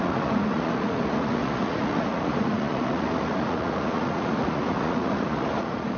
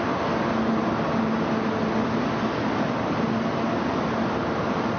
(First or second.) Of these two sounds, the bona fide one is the second